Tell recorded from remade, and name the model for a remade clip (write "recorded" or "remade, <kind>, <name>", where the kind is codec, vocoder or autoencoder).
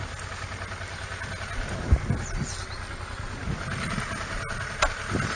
recorded